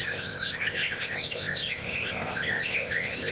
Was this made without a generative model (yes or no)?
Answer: no